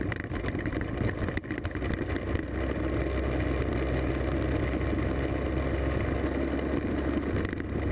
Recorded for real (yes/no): yes